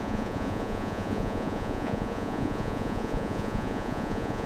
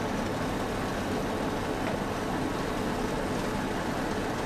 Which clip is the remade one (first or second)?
first